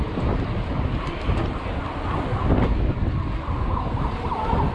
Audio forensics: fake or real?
real